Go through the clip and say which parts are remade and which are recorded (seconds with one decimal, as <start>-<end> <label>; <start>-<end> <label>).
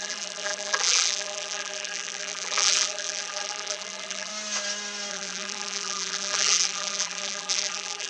0.0-4.3 remade; 4.3-5.1 recorded; 5.1-8.1 remade